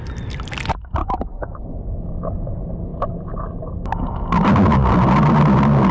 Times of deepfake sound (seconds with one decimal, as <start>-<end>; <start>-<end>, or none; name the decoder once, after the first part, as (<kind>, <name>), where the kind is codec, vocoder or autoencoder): 1.0-1.6 (autoencoder, DAC-VAE)